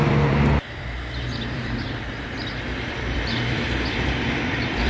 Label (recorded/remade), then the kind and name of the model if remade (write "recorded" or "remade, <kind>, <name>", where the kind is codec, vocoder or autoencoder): remade, vocoder, BigVGAN v2